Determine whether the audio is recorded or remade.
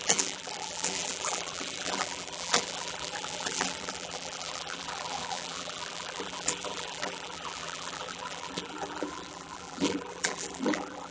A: remade